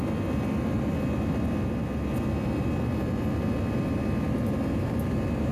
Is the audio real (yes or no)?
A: yes